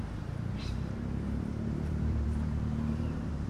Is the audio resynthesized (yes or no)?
yes